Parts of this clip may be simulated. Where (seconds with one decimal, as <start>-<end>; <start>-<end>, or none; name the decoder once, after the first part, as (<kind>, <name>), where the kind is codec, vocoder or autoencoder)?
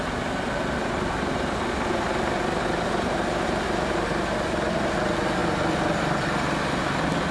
none